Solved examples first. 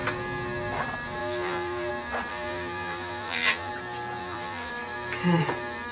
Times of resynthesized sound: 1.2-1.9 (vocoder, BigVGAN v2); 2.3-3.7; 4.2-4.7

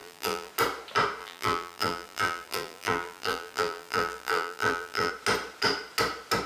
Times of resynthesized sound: 0.0-0.5 (vocoder, BigVGAN v2); 1.2-5.1

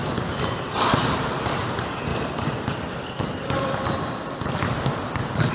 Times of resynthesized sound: 0.0-5.5 (vocoder, BigVGAN v2)

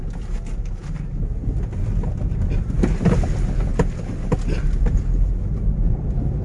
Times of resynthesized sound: none

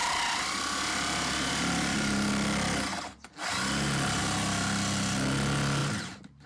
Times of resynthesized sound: 0.0-2.3 (vocoder, BigVGAN v2); 5.8-6.5